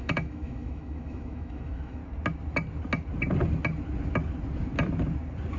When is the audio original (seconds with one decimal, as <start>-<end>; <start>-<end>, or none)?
2.0-5.6